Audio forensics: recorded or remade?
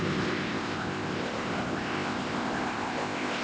remade